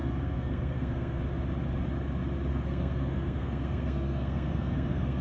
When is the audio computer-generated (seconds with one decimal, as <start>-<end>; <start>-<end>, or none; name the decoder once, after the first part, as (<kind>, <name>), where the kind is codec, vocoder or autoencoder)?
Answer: 0.0-1.2 (codec, SNAC); 2.5-5.2